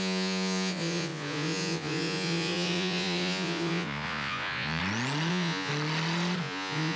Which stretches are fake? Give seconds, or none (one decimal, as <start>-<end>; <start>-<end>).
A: 0.0-4.8; 5.3-5.7; 6.4-7.0